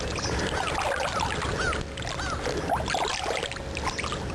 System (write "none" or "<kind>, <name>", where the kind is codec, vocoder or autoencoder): none